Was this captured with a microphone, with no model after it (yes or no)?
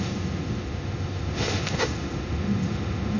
no